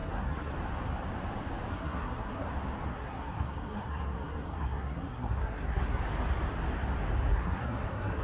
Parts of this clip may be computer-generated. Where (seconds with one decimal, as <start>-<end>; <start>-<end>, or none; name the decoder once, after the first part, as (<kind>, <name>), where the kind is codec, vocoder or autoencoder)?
0.0-0.5 (codec, SNAC); 1.7-2.5; 2.9-6.0; 7.3-8.2